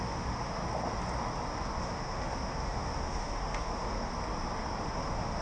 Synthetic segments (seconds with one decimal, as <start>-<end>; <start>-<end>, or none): 0.0-0.6; 1.8-4.1; 4.8-5.4